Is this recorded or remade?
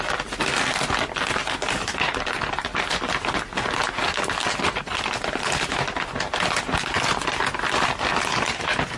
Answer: recorded